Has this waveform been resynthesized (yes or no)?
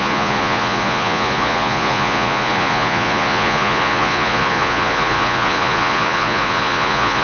yes